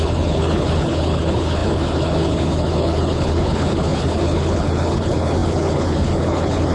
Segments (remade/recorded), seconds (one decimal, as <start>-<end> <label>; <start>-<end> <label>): 0.0-6.7 remade